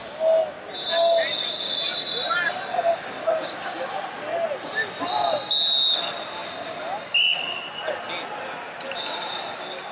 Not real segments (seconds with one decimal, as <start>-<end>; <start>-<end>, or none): 2.7-3.9